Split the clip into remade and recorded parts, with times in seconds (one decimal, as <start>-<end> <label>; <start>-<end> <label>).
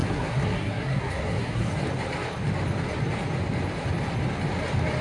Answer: 0.0-1.7 remade; 1.7-5.0 recorded